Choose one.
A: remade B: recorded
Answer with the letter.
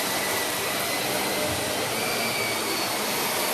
B